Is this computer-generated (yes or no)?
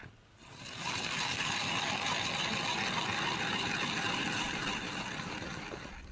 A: no